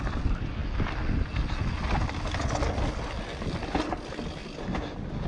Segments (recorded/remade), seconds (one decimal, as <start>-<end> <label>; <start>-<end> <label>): 0.0-5.3 recorded